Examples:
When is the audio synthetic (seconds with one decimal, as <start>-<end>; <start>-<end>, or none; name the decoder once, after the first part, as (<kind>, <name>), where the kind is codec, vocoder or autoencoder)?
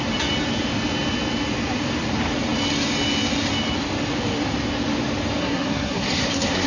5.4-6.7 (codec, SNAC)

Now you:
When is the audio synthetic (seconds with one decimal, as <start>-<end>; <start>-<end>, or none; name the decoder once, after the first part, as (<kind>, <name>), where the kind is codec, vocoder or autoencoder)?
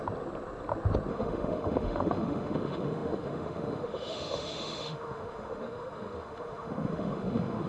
1.1-7.7 (autoencoder, DAC-VAE)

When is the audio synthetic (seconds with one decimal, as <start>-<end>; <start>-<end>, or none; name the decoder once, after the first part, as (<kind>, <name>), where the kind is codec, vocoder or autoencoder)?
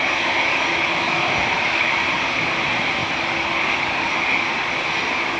0.7-1.9 (autoencoder, DAC-VAE)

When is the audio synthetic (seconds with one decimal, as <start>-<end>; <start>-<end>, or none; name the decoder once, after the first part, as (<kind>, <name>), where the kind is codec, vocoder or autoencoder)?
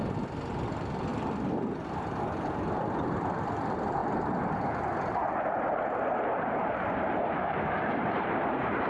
0.0-8.9 (vocoder, BigVGAN v2)